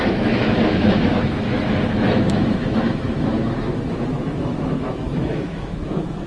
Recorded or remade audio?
remade